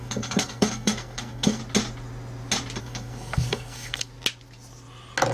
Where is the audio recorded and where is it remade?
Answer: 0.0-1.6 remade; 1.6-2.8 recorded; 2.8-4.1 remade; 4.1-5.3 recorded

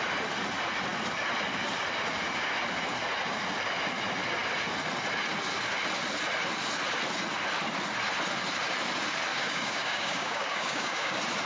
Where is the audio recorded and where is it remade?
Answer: 0.0-9.3 recorded; 9.3-11.1 remade; 11.1-11.5 recorded

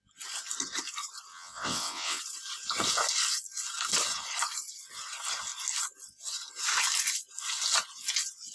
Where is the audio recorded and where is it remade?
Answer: 0.0-1.3 recorded; 1.3-2.2 remade; 2.2-8.5 recorded

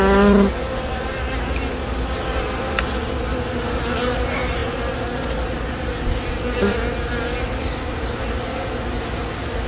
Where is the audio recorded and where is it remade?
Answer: 0.0-9.7 recorded

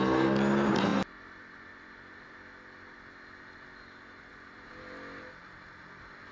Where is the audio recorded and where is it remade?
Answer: 0.0-6.3 recorded

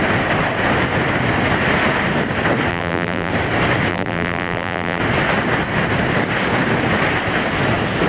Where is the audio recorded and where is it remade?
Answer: 0.0-2.7 recorded; 2.7-3.3 remade; 3.3-3.9 recorded; 3.9-5.0 remade; 5.0-8.1 recorded